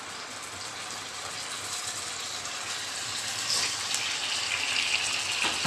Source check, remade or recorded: recorded